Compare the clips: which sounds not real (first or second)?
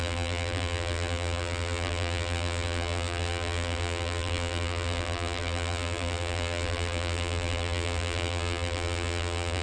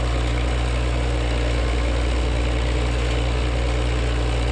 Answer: first